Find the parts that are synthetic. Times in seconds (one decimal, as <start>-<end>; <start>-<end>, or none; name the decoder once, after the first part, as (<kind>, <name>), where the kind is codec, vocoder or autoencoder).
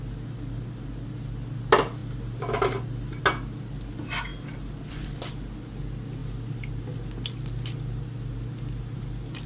2.0-3.2 (vocoder, BigVGAN v2); 4.3-4.9; 6.2-6.8